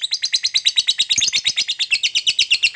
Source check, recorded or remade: recorded